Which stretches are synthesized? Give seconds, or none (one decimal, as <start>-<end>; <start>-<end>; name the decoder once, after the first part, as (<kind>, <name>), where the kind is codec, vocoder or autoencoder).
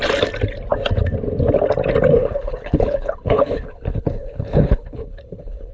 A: 2.2-5.7 (codec, HILCodec)